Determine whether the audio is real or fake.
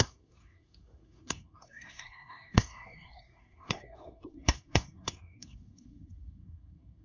fake